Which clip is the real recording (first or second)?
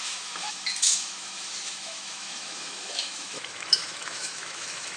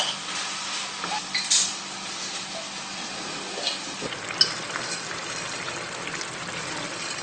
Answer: second